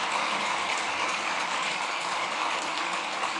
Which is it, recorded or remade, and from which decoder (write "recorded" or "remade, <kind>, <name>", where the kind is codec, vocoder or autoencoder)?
remade, codec, DAC